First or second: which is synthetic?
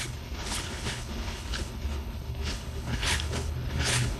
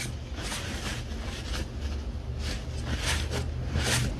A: first